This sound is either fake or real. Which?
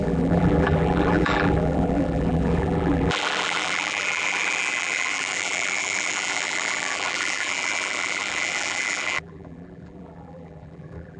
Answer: fake